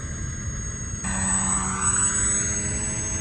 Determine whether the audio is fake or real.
real